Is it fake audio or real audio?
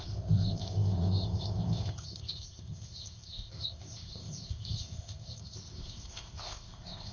fake